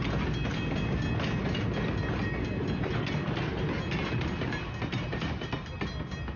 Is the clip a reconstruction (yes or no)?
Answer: no